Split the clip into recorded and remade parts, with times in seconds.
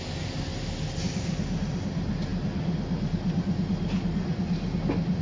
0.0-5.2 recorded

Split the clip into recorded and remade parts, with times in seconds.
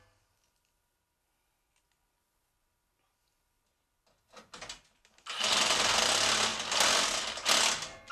0.0-8.1 recorded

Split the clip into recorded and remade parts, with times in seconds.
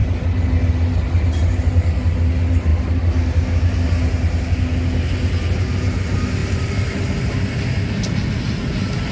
0.0-6.4 recorded; 6.4-7.0 remade; 7.0-9.1 recorded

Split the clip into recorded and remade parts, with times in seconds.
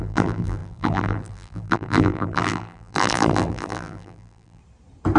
0.0-4.6 remade; 4.6-5.2 recorded